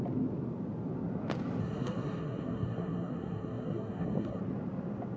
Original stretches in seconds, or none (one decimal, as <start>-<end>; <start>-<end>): 0.0-1.6; 4.4-5.2